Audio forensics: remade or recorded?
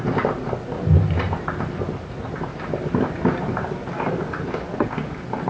recorded